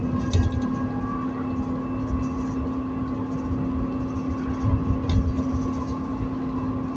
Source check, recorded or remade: recorded